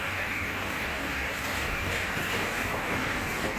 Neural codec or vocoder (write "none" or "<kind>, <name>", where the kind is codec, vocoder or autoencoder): codec, DAC